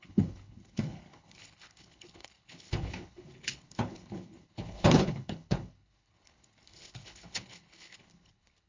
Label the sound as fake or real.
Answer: fake